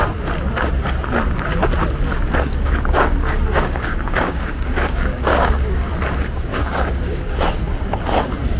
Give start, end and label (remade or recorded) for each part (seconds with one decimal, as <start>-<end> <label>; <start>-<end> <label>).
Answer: 0.0-2.3 recorded; 2.3-5.9 remade; 5.9-6.5 recorded; 6.5-7.2 remade; 7.2-8.6 recorded